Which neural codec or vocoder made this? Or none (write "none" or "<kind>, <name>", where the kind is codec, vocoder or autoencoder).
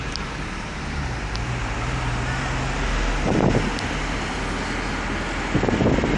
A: none